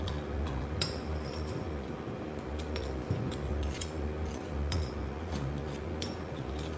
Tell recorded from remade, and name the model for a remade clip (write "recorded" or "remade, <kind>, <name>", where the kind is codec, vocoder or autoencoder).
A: remade, vocoder, Vocos